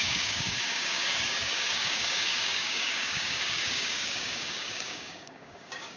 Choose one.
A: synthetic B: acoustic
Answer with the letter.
A